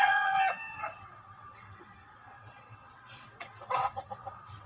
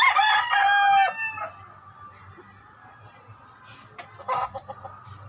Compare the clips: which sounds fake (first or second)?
first